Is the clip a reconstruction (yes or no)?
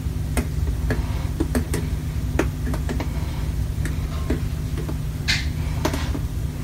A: no